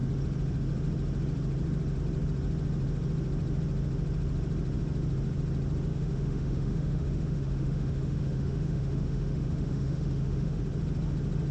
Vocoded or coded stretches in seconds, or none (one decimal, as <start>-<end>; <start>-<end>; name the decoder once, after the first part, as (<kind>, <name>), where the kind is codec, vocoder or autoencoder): 5.9-10.6 (autoencoder, DAC-VAE)